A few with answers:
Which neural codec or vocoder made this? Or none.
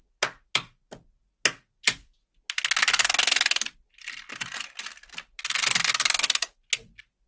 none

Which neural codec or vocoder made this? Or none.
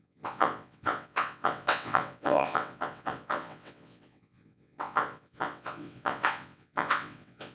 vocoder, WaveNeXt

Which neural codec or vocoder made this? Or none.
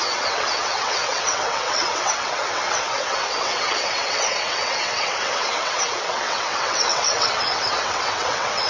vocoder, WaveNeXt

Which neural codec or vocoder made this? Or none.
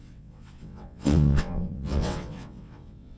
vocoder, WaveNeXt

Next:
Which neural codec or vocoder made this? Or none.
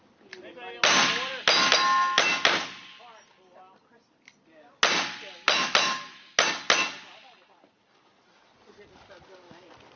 none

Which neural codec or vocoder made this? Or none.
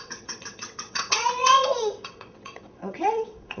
vocoder, WaveNeXt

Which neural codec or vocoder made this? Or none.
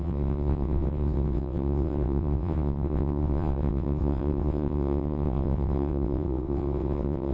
vocoder, WaveNeXt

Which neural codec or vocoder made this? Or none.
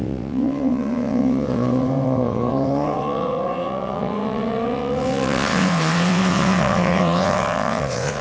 vocoder, WaveNeXt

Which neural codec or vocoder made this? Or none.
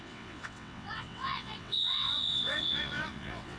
vocoder, WaveNeXt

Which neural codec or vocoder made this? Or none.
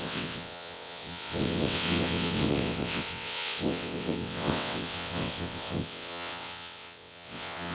vocoder, WaveNeXt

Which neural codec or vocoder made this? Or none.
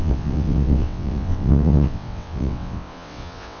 vocoder, WaveNeXt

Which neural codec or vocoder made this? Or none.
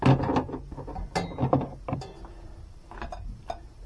none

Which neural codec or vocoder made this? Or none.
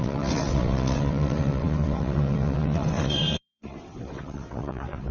vocoder, WaveNeXt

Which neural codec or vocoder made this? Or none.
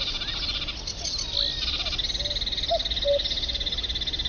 none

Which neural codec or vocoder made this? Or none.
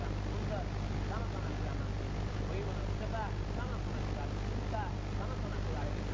none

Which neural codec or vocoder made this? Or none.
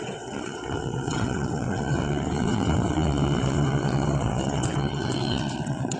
vocoder, WaveNeXt